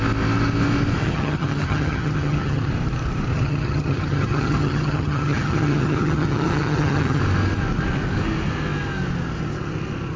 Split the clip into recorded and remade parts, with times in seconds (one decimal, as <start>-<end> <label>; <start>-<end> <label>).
0.0-1.0 recorded; 1.0-2.7 remade; 2.7-3.3 recorded; 3.3-7.2 remade; 7.2-10.2 recorded